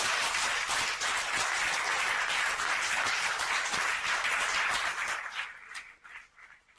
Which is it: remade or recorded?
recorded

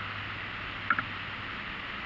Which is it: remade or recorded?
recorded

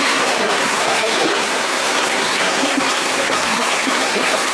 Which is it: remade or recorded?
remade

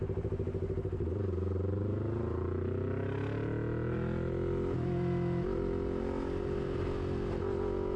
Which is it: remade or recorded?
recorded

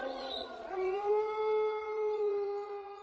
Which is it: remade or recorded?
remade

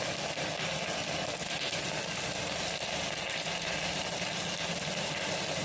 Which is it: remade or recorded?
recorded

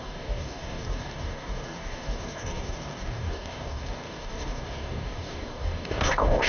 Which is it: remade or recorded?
remade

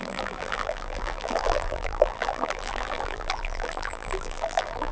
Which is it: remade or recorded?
remade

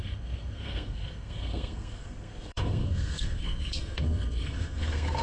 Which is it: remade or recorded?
remade